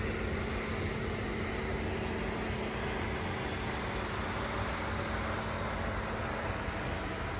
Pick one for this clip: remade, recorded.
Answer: recorded